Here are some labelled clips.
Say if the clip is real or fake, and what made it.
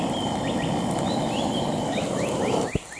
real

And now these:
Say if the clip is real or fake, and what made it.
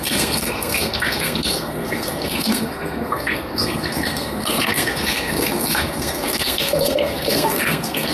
fake, codec, SNAC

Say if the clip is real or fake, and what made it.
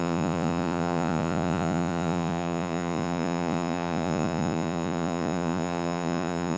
fake, vocoder, Vocos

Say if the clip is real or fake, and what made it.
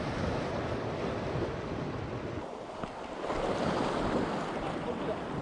fake, vocoder, BigVGAN v2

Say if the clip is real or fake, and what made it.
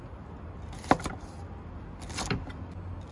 real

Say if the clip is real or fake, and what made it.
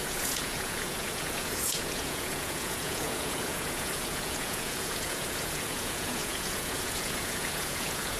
fake, vocoder, Vocos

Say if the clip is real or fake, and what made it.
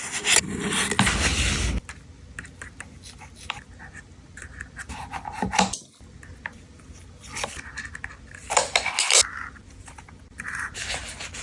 real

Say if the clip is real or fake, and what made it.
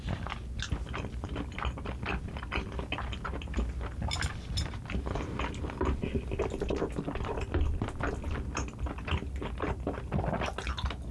real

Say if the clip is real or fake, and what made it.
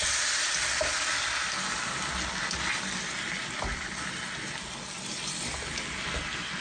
real